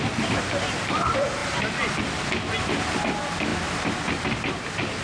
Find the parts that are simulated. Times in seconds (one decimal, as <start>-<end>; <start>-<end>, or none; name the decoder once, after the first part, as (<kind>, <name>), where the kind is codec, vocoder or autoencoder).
none